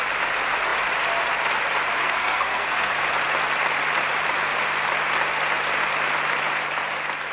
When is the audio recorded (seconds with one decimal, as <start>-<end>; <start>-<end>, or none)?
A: 0.0-2.0; 2.9-7.3

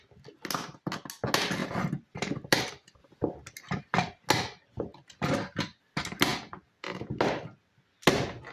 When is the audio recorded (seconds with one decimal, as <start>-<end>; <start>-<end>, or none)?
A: 0.0-1.6; 2.6-8.5

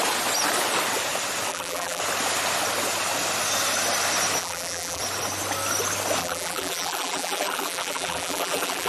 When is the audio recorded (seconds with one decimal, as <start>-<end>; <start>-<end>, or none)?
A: 0.0-1.5; 2.0-4.4; 5.0-6.2

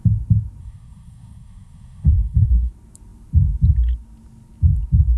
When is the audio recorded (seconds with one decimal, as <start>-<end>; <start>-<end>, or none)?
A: 0.0-0.6; 2.7-5.2

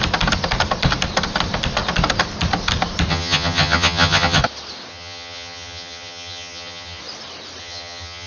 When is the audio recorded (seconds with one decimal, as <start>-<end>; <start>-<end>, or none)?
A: 0.0-3.1; 4.4-4.9; 7.0-7.6

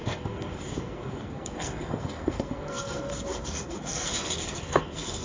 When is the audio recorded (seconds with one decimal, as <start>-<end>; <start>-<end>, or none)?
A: none

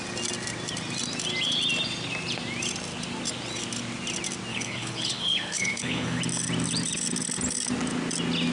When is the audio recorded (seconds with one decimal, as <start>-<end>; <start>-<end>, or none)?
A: 0.0-4.5; 6.2-8.5